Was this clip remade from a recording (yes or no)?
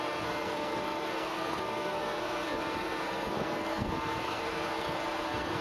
yes